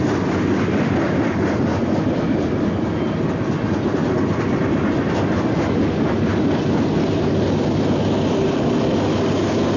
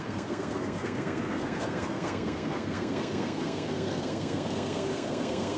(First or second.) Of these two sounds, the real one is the first